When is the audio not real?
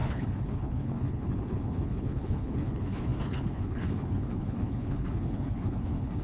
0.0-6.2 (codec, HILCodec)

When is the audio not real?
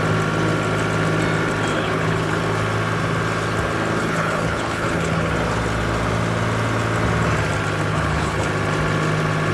1.7-2.4 (codec, HILCodec); 4.0-5.3; 7.9-8.5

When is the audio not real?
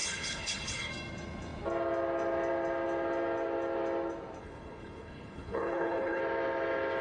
0.0-0.9 (codec, HILCodec); 4.4-6.2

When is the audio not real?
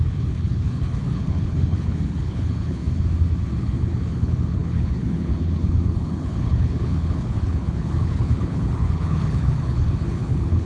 0.0-2.8 (codec, HILCodec); 3.6-10.7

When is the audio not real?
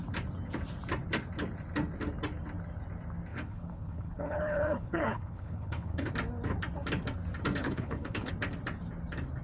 3.3-6.1 (codec, HILCodec); 7.6-8.3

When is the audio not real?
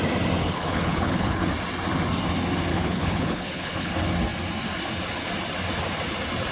0.4-1.5 (codec, HILCodec); 2.7-3.9